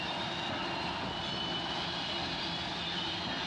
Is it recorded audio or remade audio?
recorded